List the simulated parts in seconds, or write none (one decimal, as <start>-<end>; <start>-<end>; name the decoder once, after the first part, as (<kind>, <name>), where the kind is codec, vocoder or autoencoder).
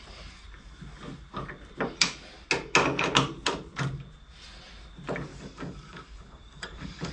5.3-7.1 (codec, DAC)